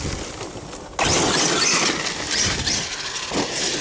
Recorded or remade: recorded